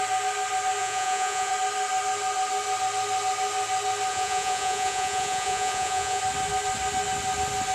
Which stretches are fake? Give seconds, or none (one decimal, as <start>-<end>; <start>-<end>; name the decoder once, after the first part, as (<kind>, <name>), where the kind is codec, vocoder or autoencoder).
0.8-1.5 (vocoder, Vocos); 4.1-6.2

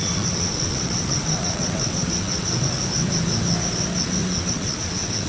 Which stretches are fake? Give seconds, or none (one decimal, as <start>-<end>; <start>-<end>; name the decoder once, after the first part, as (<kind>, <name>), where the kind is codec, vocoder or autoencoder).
0.0-2.8 (vocoder, WaveNeXt); 4.2-5.3

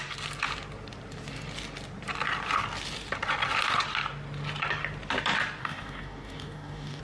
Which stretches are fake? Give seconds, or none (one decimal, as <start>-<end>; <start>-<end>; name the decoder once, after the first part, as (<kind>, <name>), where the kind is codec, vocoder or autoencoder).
5.6-7.0 (codec, DAC)

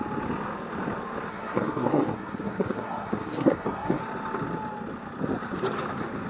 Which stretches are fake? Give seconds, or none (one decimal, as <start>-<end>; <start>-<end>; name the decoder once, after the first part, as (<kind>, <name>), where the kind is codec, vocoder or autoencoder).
1.3-4.0 (codec, SNAC)

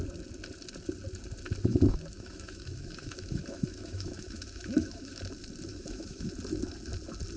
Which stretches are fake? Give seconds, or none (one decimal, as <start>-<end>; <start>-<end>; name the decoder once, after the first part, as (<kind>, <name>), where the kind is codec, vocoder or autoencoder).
1.6-5.2 (autoencoder, DAC-VAE); 5.7-6.3

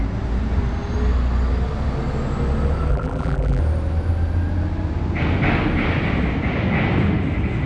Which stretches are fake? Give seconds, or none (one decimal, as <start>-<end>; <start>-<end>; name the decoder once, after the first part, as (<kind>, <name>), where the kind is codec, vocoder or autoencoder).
2.9-3.6 (vocoder, BigVGAN v2)

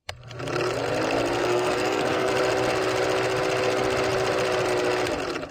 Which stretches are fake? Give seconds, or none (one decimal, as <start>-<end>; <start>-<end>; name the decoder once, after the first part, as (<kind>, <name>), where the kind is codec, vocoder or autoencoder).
1.4-2.3 (codec, SNAC)